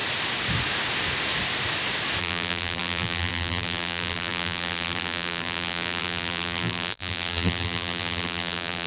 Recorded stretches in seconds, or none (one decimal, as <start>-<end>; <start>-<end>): 0.0-2.2